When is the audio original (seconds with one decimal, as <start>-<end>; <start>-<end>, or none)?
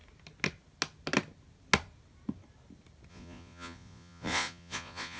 0.0-3.1